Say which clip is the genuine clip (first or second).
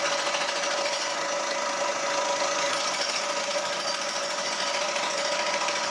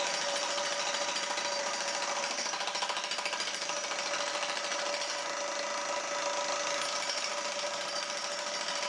second